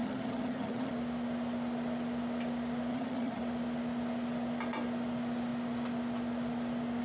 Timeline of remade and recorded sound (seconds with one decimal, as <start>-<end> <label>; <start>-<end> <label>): 0.0-0.9 remade; 0.9-2.9 recorded; 2.9-3.4 remade; 3.4-7.0 recorded

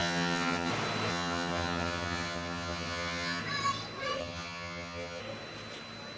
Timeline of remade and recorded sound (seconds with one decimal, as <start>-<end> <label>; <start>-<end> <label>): 0.0-0.7 remade; 0.7-1.1 recorded; 1.1-3.4 remade; 3.4-4.2 recorded; 4.2-5.2 remade; 5.2-6.2 recorded

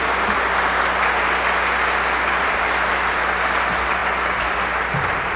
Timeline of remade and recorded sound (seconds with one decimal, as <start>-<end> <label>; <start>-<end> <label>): 0.0-5.4 recorded

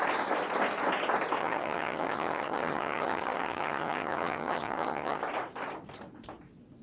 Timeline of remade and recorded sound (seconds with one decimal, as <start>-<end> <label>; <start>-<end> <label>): 0.0-1.4 recorded; 1.4-5.2 remade; 5.2-6.8 recorded

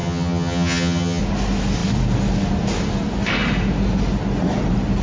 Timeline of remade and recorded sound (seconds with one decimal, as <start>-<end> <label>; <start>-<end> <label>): 0.0-1.2 remade; 1.2-5.0 recorded

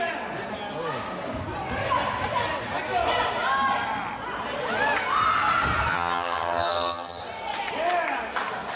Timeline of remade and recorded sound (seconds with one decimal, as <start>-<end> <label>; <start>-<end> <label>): 0.0-5.9 recorded; 5.9-7.2 remade; 7.2-8.8 recorded

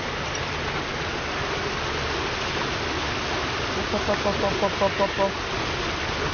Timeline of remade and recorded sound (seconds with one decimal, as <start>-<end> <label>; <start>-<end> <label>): 0.0-6.3 recorded

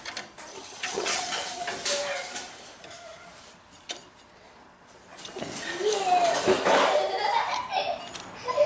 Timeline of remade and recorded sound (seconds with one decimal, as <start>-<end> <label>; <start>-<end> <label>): 0.0-0.5 recorded; 0.5-1.6 remade; 1.6-8.7 recorded